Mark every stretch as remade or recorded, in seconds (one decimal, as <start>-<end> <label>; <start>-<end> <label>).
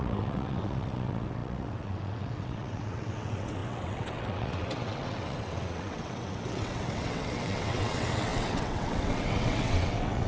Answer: 0.0-10.3 remade